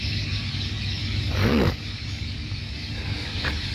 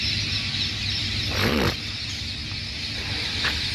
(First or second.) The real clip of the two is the second